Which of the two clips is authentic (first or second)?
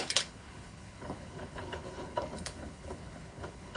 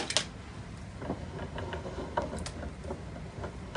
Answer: second